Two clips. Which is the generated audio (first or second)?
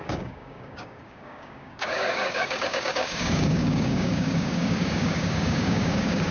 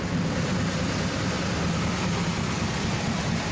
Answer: first